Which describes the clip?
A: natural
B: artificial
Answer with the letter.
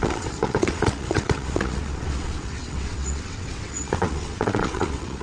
B